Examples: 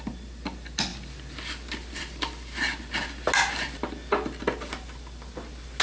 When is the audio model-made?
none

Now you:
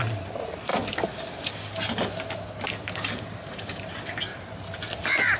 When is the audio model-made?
4.3-5.0 (vocoder, BigVGAN v2)

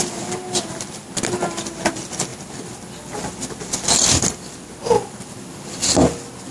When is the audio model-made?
2.3-6.5 (vocoder, BigVGAN v2)